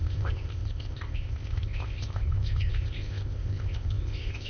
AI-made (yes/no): yes